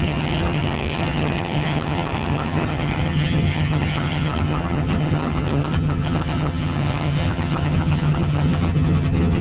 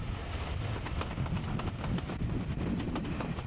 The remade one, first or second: first